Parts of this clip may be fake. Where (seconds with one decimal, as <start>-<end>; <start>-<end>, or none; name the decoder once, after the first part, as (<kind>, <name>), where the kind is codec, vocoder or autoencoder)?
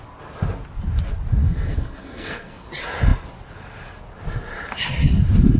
1.4-2.7 (codec, SNAC)